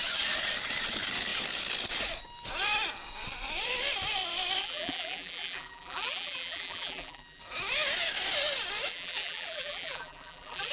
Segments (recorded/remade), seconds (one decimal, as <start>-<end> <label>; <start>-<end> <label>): 0.0-4.6 recorded; 4.6-7.4 remade; 7.4-8.9 recorded; 8.9-10.7 remade